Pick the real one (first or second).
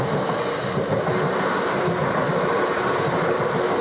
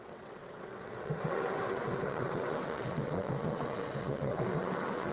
first